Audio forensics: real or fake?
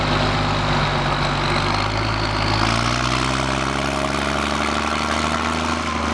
real